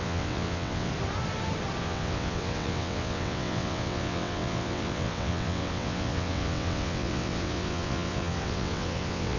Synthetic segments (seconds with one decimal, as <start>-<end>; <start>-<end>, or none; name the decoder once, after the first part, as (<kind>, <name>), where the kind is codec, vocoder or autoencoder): 0.0-0.9 (vocoder, WaveNeXt); 1.8-9.4